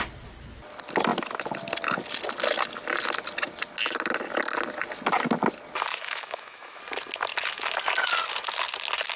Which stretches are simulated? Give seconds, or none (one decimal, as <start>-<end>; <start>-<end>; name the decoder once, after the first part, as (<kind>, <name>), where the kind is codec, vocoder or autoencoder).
5.9-6.8 (autoencoder, DAC-VAE)